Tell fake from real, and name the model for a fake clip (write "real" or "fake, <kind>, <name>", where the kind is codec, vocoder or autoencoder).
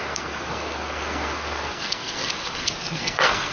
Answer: fake, codec, SNAC